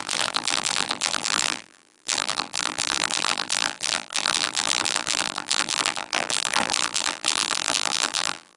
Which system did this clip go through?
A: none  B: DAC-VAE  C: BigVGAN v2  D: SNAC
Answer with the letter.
C